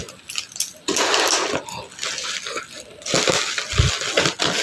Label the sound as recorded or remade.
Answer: recorded